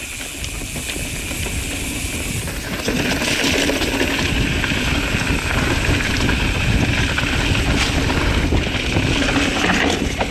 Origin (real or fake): real